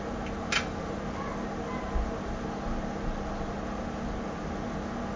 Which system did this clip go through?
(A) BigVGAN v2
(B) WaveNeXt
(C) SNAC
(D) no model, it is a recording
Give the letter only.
D